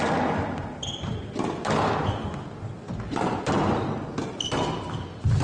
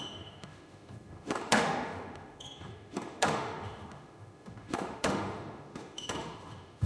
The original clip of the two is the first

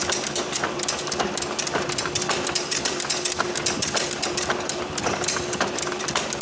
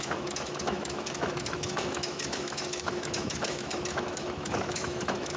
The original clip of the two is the first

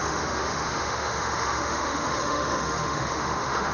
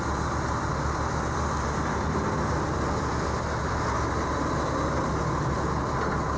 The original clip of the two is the second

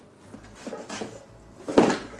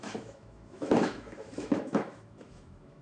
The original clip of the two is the first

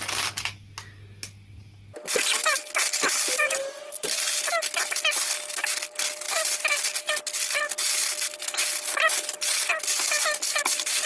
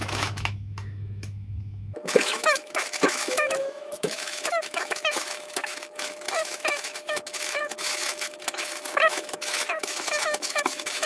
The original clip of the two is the first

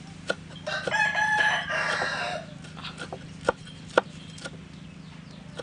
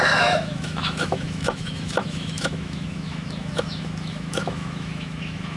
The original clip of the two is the first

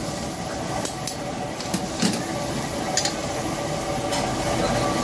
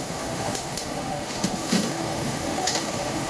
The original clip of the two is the first